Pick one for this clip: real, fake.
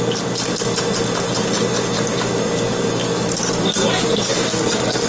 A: real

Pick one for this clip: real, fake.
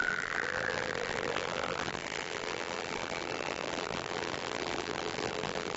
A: fake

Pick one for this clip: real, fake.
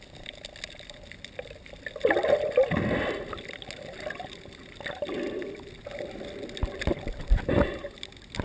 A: real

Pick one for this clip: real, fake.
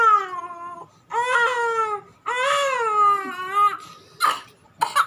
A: real